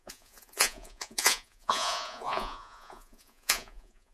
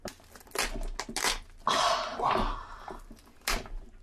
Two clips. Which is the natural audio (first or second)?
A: second